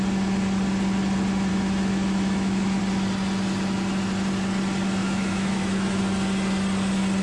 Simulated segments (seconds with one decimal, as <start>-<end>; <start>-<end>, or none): 1.5-2.8; 5.0-6.0